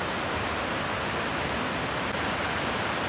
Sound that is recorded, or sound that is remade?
recorded